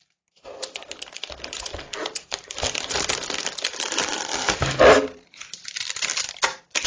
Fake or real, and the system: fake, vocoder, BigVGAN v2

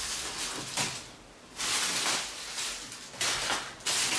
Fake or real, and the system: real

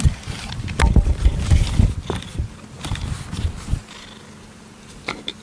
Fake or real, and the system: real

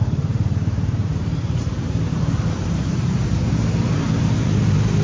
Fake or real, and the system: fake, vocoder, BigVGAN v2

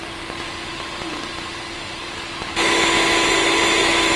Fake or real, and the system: real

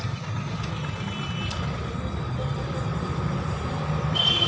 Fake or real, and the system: fake, vocoder, BigVGAN v2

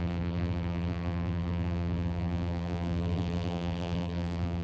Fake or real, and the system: fake, vocoder, BigVGAN v2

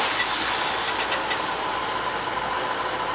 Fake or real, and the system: real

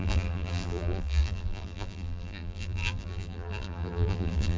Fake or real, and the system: fake, vocoder, BigVGAN v2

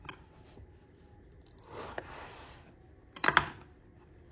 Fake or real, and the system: real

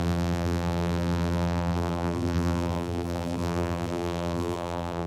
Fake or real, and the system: fake, vocoder, BigVGAN v2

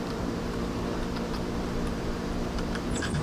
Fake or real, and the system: fake, vocoder, BigVGAN v2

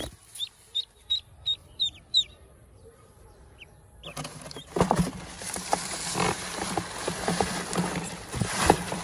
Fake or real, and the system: fake, vocoder, BigVGAN v2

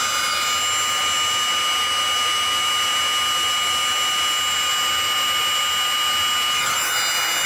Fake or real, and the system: real